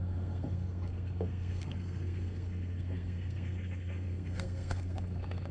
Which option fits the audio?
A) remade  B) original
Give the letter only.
A